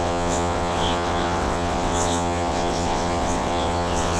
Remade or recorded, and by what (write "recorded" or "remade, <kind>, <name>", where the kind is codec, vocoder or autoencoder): remade, vocoder, WaveNeXt